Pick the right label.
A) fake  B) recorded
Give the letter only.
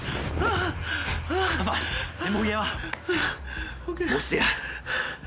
B